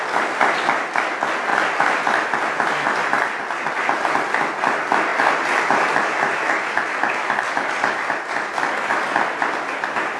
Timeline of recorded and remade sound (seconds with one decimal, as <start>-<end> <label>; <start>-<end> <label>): 0.0-1.5 recorded; 1.5-3.7 remade; 3.7-5.1 recorded; 5.1-10.2 remade